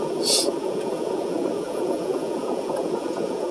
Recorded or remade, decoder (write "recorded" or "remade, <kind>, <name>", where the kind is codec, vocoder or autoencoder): remade, vocoder, Vocos